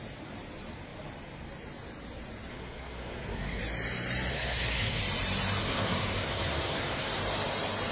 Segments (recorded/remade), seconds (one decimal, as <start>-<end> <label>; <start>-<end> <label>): 0.0-2.5 recorded; 2.5-3.6 remade; 3.6-4.3 recorded; 4.3-5.0 remade; 5.0-5.6 recorded; 5.6-7.2 remade; 7.2-7.9 recorded